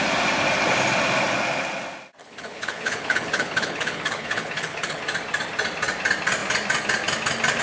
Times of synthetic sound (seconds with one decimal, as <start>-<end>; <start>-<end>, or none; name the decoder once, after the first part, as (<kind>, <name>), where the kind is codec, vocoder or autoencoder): 2.2-5.0 (codec, HILCodec)